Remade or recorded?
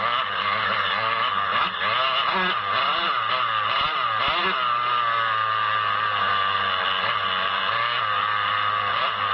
recorded